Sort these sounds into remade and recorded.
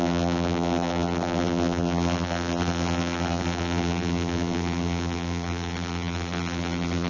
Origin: remade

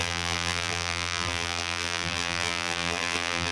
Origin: remade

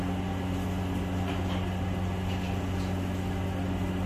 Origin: recorded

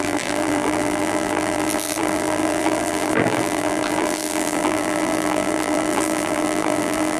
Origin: remade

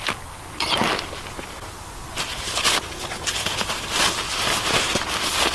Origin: recorded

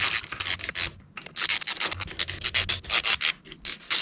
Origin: recorded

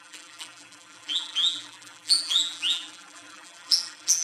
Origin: remade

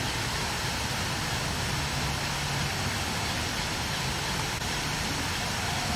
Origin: recorded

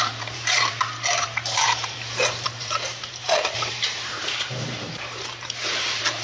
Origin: remade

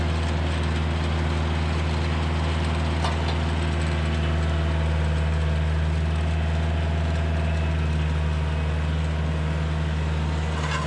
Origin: recorded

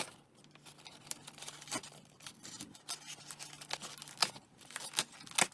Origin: recorded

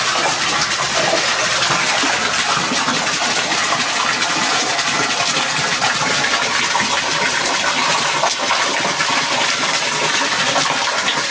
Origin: recorded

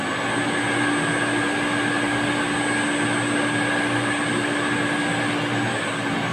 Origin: recorded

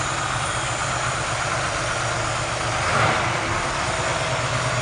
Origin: remade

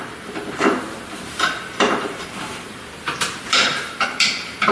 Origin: remade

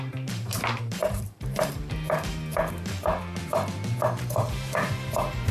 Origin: remade